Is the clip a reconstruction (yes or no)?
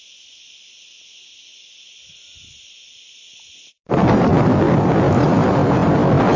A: no